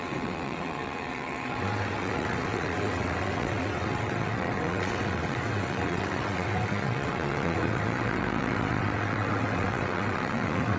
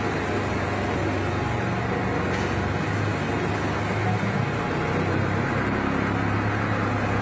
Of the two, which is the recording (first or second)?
second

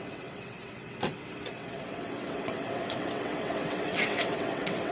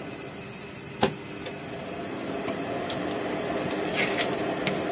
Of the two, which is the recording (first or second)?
second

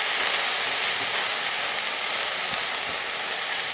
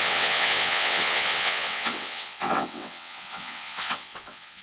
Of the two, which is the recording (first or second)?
first